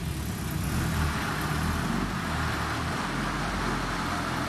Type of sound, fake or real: real